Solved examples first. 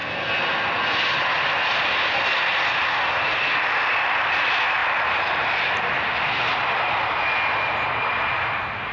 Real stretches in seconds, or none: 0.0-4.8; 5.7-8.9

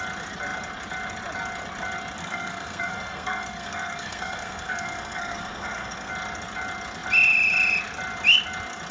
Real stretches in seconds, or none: 0.0-2.2; 6.1-8.9

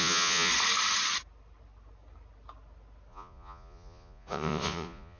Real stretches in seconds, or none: 0.5-3.1

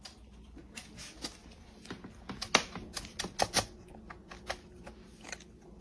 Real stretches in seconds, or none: 0.0-5.8